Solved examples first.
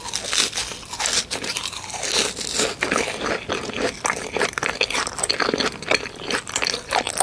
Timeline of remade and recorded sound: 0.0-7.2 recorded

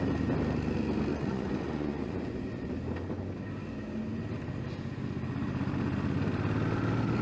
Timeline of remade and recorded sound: 0.0-1.1 recorded; 1.1-2.7 remade; 2.7-7.2 recorded